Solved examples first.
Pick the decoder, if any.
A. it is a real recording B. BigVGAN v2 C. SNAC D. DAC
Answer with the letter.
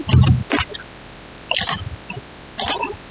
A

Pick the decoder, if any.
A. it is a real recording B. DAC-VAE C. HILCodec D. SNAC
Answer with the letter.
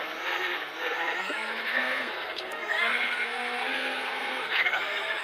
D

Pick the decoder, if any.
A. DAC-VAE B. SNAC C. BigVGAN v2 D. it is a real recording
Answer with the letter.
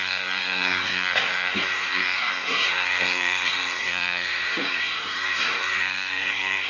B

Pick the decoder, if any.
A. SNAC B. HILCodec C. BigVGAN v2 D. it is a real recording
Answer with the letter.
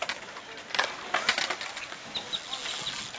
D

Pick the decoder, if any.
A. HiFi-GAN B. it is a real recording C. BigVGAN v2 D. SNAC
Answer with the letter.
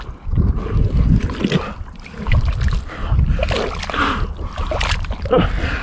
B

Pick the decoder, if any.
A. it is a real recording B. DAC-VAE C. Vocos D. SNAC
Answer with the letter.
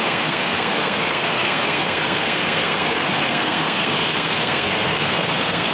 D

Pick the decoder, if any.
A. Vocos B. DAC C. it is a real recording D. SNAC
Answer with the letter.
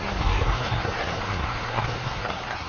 D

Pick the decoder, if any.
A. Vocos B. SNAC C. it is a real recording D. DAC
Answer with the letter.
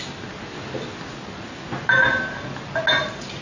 C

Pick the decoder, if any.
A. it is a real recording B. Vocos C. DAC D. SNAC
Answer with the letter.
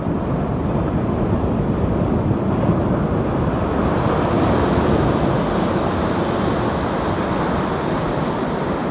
A